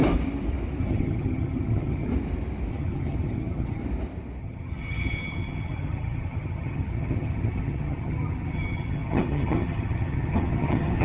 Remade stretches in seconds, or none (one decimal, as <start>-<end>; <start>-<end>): 0.8-2.1; 2.7-3.8; 4.4-11.0